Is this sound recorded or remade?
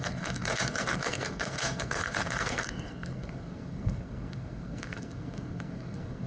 remade